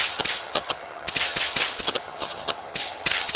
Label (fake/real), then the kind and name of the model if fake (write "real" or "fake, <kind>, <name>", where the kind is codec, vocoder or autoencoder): fake, vocoder, HiFi-GAN